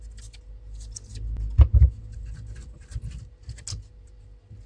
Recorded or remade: recorded